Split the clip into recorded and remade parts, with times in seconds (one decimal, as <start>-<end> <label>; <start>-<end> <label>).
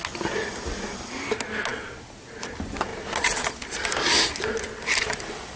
0.0-5.6 recorded